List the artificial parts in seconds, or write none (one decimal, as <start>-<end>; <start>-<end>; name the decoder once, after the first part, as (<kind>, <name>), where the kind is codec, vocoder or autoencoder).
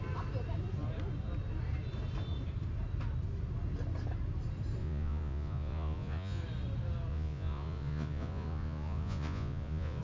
4.8-6.4 (vocoder, Vocos); 7.1-10.0